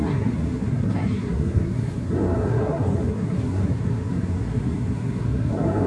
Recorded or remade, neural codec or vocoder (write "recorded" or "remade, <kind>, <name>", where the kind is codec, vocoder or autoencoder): remade, codec, SNAC